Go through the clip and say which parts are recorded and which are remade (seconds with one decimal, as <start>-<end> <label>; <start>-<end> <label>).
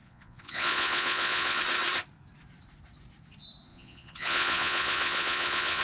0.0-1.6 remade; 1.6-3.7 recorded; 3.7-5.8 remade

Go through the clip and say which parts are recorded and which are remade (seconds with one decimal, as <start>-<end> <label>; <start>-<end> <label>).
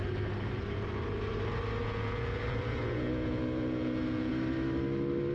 0.0-1.8 recorded; 1.8-4.3 remade; 4.3-5.3 recorded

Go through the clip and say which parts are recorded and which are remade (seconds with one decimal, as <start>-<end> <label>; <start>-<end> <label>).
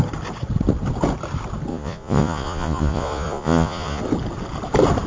0.0-1.7 recorded; 1.7-4.0 remade; 4.0-5.1 recorded